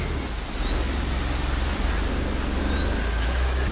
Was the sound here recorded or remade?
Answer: recorded